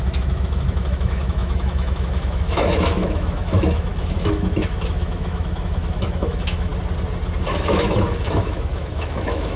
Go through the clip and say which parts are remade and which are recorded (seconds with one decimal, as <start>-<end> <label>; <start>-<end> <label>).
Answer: 0.0-6.7 remade; 6.7-7.5 recorded; 7.5-9.6 remade